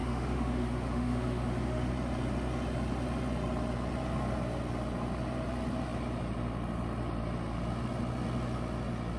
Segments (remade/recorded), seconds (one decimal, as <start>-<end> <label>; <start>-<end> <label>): 0.0-1.9 remade; 1.9-9.2 recorded